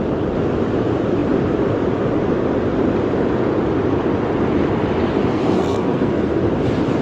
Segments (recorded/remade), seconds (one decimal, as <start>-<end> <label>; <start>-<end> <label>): 0.0-5.3 recorded; 5.3-6.4 remade; 6.4-7.0 recorded